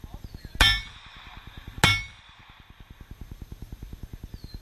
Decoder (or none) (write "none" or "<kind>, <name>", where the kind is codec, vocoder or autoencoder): none